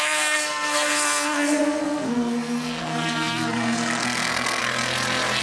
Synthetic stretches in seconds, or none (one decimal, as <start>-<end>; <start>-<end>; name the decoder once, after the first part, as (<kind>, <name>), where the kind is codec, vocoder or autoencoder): 0.0-4.6 (codec, SNAC)